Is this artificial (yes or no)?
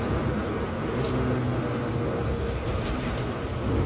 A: no